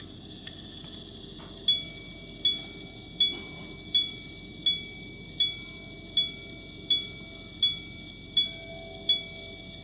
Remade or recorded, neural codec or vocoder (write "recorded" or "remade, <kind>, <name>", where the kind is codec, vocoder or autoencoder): recorded